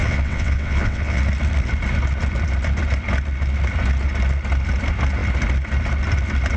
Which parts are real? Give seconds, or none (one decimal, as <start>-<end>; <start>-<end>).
1.2-6.6